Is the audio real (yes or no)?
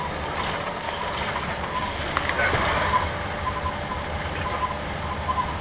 yes